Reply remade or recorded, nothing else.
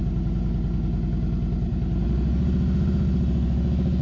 recorded